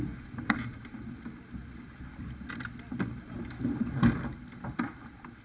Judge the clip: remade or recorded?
recorded